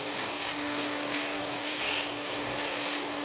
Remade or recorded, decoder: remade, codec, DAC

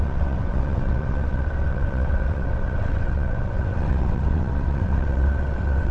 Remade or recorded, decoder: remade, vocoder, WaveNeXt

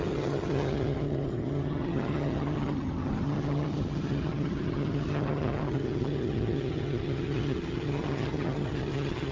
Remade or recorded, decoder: remade, vocoder, HiFi-GAN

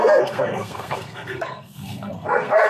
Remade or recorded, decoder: remade, codec, SNAC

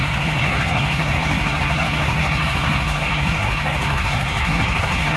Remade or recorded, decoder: remade, codec, SNAC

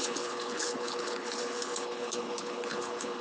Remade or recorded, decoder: remade, codec, HILCodec